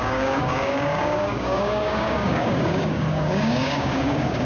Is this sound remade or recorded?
remade